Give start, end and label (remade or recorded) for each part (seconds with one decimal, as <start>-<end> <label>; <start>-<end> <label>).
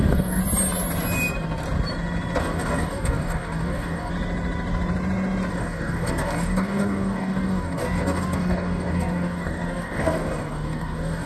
0.0-0.4 remade; 0.4-2.4 recorded; 2.4-4.1 remade; 4.1-5.5 recorded; 5.5-11.3 remade